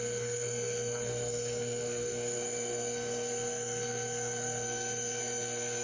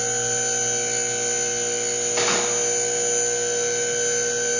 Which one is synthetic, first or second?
first